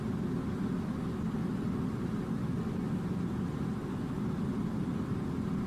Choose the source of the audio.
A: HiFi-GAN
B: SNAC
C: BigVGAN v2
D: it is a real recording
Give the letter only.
D